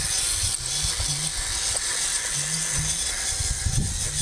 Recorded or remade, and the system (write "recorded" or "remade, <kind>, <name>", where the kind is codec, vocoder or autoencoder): recorded